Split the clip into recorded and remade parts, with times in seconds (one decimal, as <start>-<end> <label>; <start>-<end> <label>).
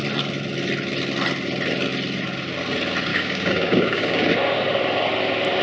0.0-3.1 recorded; 3.1-4.3 remade; 4.3-5.6 recorded